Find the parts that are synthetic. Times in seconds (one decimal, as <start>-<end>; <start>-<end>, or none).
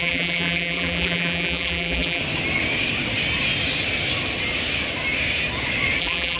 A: 0.0-2.2; 6.0-6.4